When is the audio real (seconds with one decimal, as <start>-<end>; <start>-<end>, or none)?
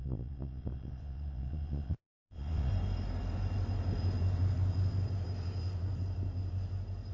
2.7-7.1